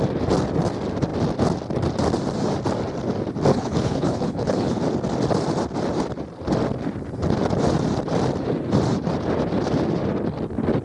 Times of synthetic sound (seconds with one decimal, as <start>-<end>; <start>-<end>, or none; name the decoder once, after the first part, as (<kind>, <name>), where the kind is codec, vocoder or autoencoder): 3.5-4.8 (codec, HILCodec)